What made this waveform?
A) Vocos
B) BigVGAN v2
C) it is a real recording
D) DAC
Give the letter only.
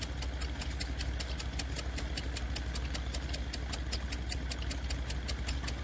C